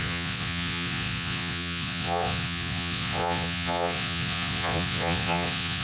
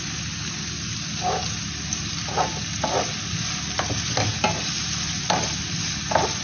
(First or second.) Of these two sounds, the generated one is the first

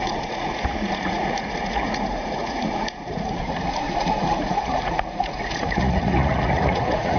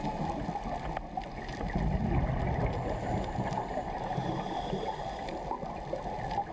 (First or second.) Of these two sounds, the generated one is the first